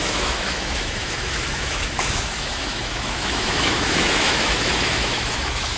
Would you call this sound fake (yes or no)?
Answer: yes